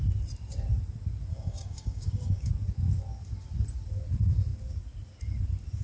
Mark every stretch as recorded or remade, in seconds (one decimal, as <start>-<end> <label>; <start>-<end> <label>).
0.0-1.3 recorded; 1.3-2.5 remade; 2.5-5.8 recorded